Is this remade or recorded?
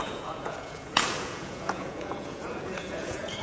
remade